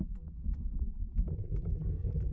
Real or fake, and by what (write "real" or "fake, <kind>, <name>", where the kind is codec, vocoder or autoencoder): fake, codec, DAC